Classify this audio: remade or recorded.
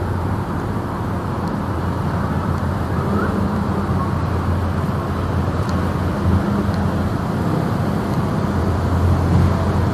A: recorded